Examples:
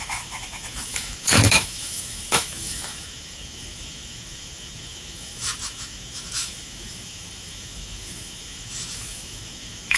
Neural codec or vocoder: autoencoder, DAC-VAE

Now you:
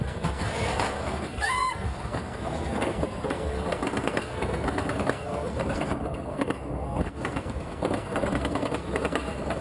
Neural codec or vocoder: codec, SNAC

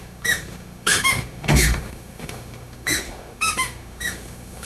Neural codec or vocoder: autoencoder, DAC-VAE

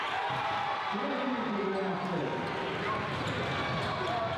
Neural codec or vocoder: none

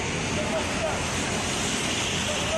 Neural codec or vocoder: none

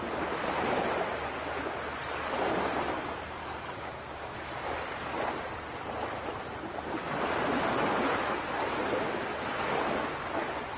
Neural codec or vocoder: none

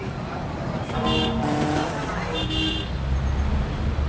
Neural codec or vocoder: none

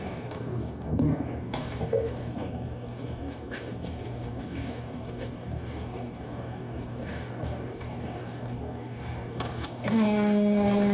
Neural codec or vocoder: codec, DAC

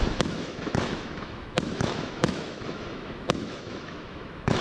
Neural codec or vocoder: autoencoder, DAC-VAE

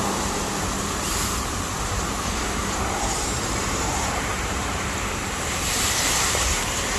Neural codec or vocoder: vocoder, BigVGAN v2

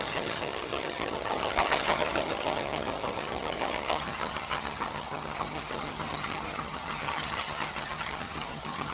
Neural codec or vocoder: vocoder, HiFi-GAN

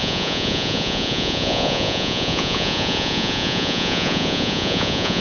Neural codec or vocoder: vocoder, Vocos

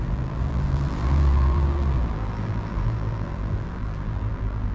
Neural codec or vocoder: vocoder, BigVGAN v2